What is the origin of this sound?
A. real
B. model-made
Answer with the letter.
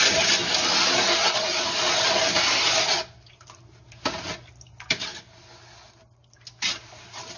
A